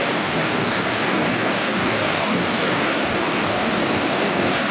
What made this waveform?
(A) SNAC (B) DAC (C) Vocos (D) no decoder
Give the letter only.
B